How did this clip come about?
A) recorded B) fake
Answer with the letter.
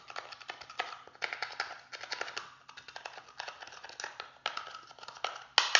A